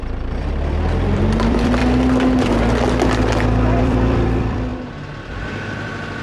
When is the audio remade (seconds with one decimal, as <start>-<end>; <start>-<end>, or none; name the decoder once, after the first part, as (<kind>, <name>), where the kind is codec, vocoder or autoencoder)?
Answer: 0.0-1.8 (vocoder, BigVGAN v2); 3.8-4.7; 5.3-6.2